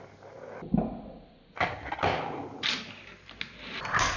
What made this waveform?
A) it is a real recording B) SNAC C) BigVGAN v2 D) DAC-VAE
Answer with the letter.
A